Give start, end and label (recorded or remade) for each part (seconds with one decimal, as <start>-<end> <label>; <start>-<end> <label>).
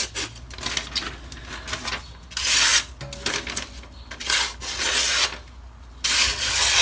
0.0-6.8 recorded